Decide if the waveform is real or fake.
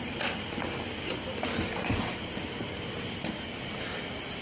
real